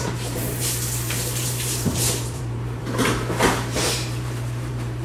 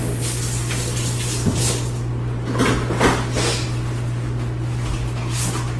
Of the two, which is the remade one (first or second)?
first